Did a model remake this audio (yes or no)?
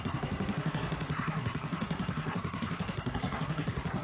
yes